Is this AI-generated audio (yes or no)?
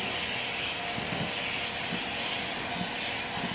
no